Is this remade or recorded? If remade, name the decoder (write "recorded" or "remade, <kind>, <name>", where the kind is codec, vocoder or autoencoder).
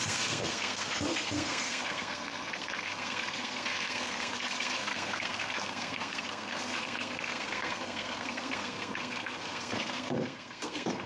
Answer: remade, codec, SNAC